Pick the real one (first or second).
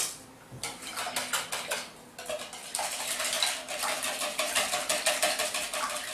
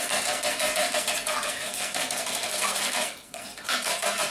first